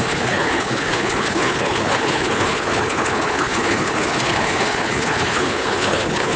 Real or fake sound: fake